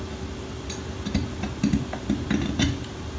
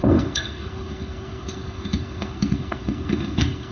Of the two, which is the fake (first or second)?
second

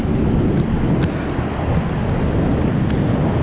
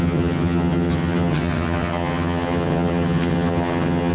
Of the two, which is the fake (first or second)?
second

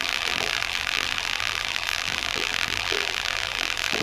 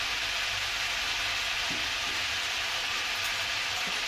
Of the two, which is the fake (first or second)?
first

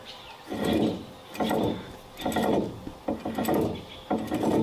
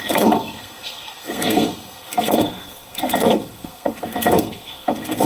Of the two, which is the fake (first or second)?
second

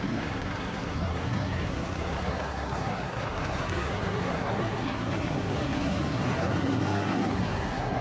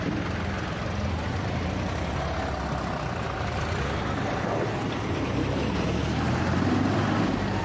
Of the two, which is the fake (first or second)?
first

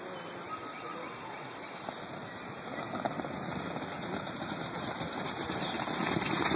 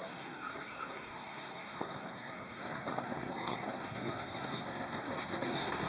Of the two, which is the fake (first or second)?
second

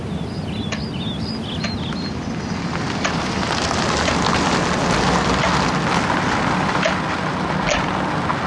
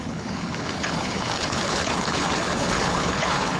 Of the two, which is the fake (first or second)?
second